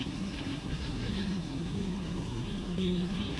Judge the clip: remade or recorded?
remade